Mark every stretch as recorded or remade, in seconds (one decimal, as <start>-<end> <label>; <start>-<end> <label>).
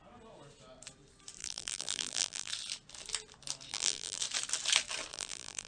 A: 0.0-1.4 recorded; 1.4-2.5 remade; 2.5-3.7 recorded; 3.7-4.2 remade; 4.2-5.1 recorded; 5.1-5.7 remade